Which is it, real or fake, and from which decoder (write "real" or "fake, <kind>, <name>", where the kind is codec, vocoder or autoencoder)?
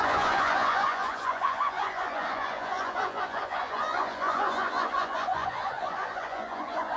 fake, vocoder, Vocos